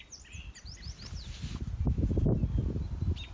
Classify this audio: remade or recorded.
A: recorded